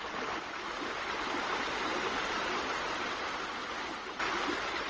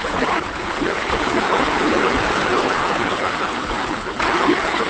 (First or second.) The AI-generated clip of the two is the second